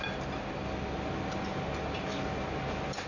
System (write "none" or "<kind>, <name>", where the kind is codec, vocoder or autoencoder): none